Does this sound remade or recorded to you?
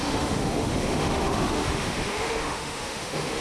remade